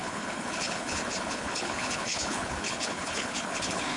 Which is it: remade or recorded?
remade